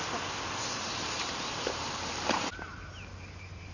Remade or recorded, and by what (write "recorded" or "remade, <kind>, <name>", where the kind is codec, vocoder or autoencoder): recorded